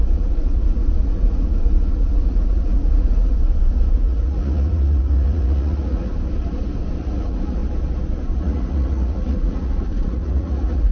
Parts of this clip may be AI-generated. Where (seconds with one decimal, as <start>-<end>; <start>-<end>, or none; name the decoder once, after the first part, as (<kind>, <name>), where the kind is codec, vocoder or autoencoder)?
0.0-6.1 (vocoder, Vocos); 7.0-7.6; 8.4-10.9